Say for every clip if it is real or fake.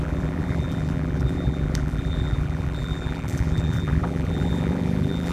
fake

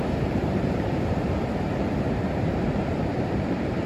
fake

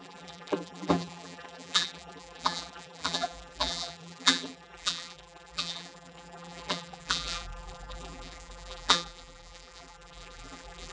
fake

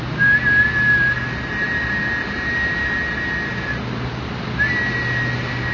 real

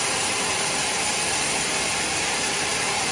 fake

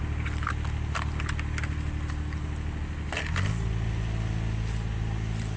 real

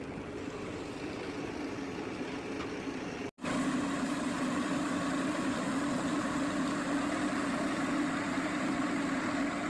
real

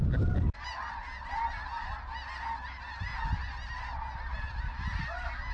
real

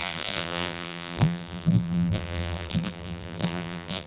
fake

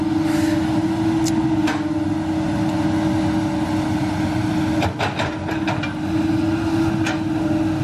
real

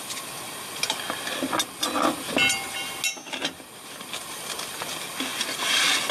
real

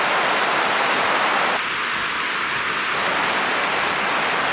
real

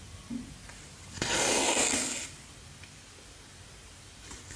real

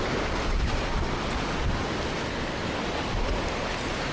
real